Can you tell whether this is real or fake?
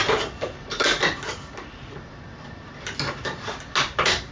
real